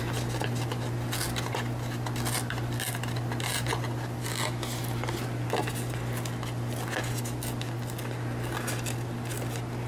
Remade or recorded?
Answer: recorded